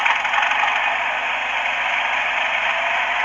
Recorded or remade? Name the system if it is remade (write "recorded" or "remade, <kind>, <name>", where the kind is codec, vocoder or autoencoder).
recorded